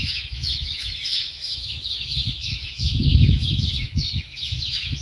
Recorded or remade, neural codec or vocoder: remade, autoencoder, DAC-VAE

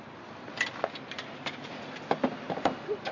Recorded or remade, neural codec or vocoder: recorded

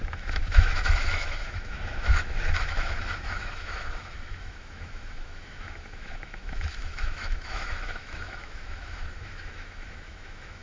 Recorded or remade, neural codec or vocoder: remade, autoencoder, DAC-VAE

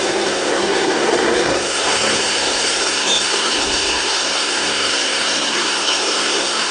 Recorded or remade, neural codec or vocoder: remade, codec, SNAC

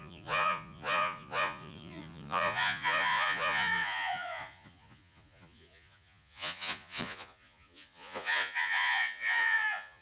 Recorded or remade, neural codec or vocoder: remade, vocoder, Vocos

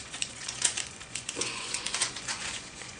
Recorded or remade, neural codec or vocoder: remade, vocoder, Vocos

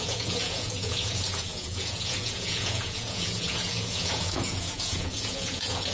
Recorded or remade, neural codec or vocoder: remade, vocoder, Vocos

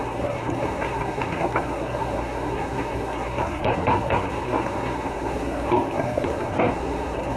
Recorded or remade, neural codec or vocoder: remade, codec, SNAC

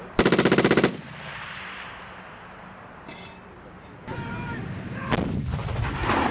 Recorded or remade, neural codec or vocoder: recorded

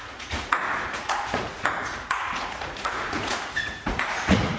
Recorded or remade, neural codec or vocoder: remade, vocoder, Vocos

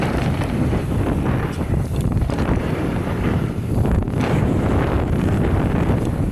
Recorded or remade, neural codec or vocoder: remade, vocoder, BigVGAN v2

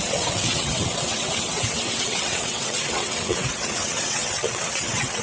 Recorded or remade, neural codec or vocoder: remade, vocoder, WaveNeXt